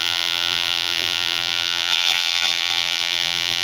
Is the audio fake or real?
fake